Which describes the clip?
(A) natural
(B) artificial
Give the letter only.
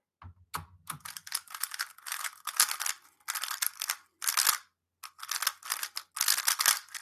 A